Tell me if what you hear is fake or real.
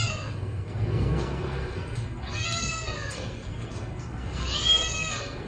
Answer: fake